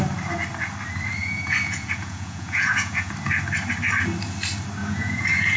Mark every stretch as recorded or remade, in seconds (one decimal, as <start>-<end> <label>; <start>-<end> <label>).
0.0-1.2 recorded; 1.2-3.1 remade; 3.1-4.8 recorded; 4.8-5.6 remade